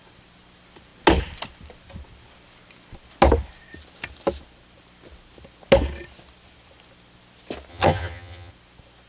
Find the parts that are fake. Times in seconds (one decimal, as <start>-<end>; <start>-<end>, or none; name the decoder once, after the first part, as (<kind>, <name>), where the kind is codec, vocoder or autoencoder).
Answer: 7.7-8.5 (vocoder, HiFi-GAN)